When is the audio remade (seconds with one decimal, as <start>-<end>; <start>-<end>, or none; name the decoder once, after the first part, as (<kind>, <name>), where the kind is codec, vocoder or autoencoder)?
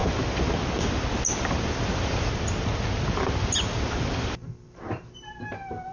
none